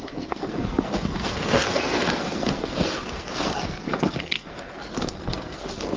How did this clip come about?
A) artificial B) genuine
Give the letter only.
A